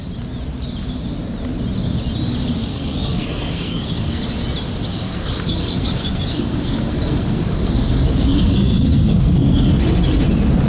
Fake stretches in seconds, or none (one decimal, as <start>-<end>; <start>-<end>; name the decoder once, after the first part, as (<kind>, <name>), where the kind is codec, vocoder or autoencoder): 2.6-4.2 (codec, SNAC); 4.9-9.7